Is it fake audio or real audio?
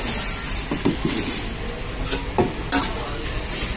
real